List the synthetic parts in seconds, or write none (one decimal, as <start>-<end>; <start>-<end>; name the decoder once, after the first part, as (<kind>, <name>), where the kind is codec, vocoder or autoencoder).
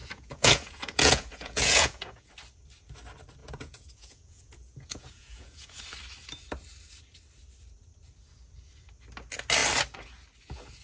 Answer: 0.0-2.3 (vocoder, Vocos); 3.4-5.8